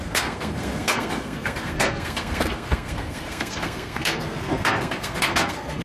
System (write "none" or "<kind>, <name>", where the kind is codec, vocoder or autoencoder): codec, SNAC